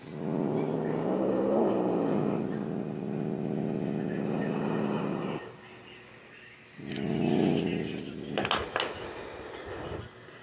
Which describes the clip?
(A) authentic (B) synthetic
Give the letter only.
A